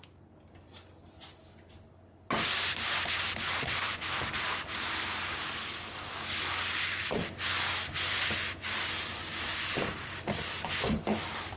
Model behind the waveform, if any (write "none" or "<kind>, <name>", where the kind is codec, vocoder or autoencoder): none